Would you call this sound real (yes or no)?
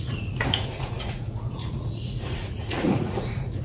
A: no